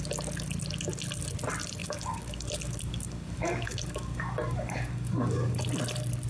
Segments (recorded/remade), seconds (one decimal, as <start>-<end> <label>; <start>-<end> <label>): 0.0-1.8 recorded; 1.8-5.6 remade; 5.6-6.3 recorded